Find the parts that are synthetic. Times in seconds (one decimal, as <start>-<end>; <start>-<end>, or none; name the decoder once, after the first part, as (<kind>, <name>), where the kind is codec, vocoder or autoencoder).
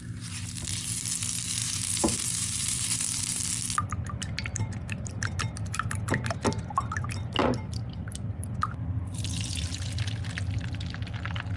1.6-3.4 (vocoder, BigVGAN v2); 4.5-5.4